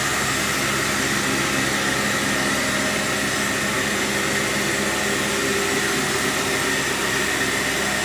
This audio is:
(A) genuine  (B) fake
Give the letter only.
A